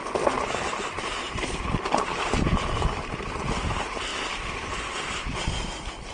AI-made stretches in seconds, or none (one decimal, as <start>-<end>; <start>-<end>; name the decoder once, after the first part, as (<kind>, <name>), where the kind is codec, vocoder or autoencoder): 0.0-6.1 (vocoder, BigVGAN v2)